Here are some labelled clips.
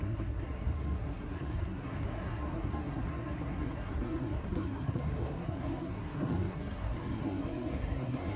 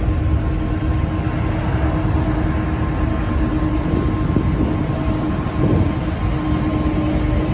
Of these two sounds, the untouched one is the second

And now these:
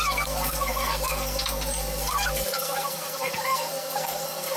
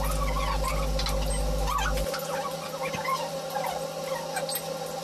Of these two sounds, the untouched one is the second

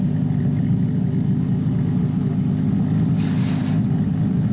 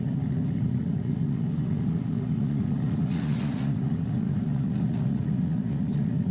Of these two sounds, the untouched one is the first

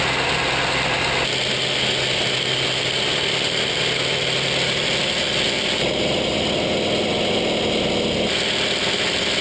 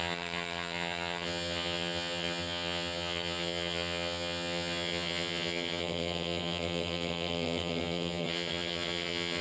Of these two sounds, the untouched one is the first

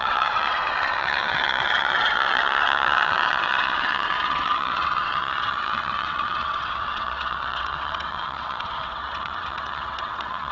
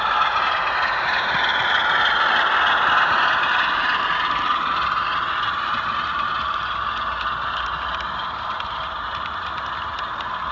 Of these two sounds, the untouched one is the second